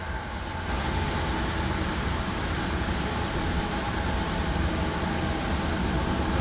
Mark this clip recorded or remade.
recorded